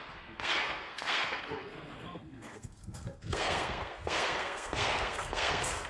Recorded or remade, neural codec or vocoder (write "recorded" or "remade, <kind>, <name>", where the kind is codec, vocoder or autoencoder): remade, codec, SNAC